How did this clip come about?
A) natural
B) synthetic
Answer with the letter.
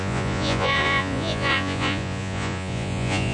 B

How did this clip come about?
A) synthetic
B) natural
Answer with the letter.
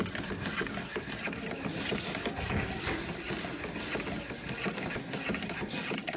B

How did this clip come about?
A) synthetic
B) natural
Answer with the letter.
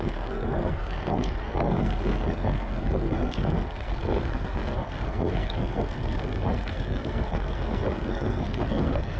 A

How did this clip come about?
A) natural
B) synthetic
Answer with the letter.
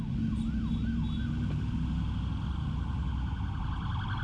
A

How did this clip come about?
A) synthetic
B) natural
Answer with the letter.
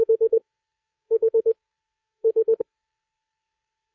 A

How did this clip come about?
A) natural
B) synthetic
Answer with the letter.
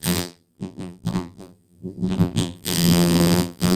B